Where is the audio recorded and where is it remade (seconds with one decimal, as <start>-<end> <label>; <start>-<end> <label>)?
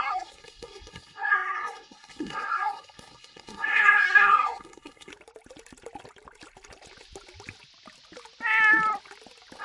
0.0-5.1 remade; 5.1-9.6 recorded